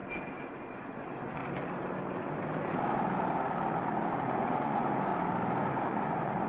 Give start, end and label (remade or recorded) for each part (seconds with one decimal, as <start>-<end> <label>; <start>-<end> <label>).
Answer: 0.0-0.5 recorded; 0.5-1.4 remade; 1.4-4.3 recorded; 4.3-5.1 remade; 5.1-5.7 recorded; 5.7-6.5 remade